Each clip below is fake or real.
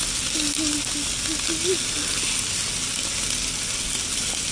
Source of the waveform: real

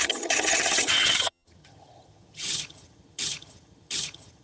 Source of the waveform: fake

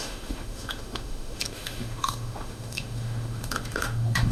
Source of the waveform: fake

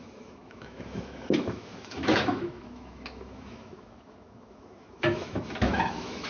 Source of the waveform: fake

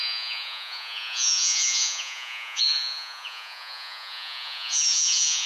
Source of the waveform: fake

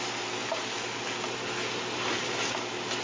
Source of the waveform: real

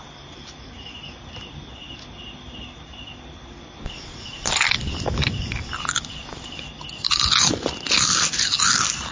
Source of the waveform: real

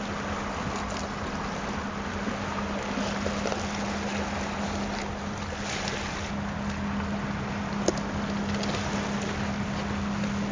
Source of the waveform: real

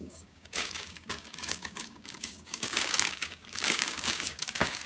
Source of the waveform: fake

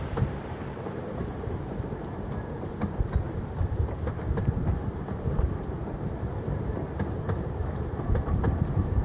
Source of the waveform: fake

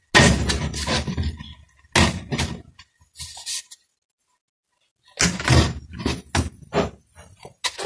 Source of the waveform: real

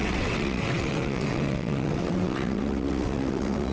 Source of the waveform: fake